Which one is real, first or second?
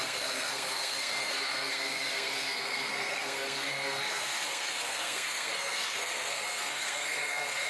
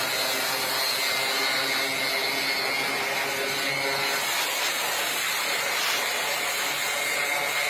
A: second